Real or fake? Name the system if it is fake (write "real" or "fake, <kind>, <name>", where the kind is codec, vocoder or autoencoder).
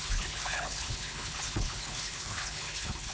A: fake, codec, HILCodec